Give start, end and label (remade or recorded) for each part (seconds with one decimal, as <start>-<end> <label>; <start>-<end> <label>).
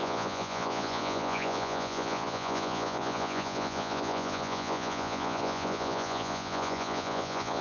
0.0-7.6 remade